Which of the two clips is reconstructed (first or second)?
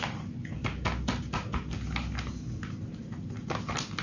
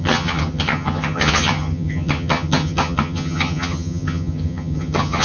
second